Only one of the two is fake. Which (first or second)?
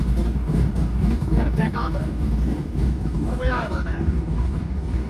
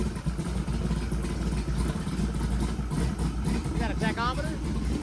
first